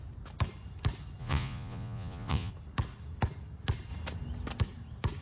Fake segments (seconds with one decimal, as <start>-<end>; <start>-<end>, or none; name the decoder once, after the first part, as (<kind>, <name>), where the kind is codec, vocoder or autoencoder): 1.2-2.5 (vocoder, Vocos)